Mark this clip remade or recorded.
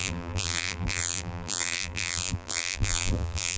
remade